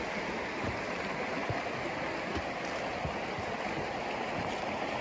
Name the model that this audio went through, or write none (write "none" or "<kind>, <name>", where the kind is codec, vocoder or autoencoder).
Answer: none